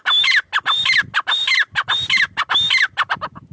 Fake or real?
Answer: real